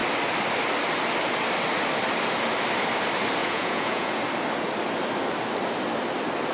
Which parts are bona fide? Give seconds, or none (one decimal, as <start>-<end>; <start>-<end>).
0.0-3.4; 4.2-6.5